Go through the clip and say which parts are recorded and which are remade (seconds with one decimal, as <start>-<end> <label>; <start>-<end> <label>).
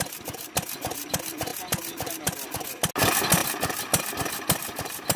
0.0-5.2 recorded